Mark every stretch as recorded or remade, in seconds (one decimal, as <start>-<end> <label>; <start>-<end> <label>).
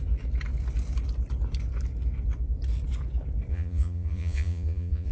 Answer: 0.0-3.5 recorded; 3.5-5.1 remade